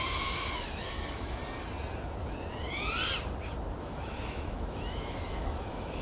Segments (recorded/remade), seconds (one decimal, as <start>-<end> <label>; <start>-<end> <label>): 0.0-1.4 remade; 1.4-3.8 recorded; 3.8-6.0 remade

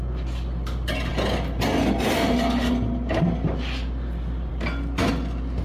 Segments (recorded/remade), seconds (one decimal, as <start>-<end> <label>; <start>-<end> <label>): 0.0-5.6 recorded